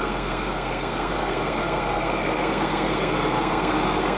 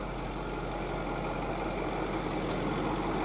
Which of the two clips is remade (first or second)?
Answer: first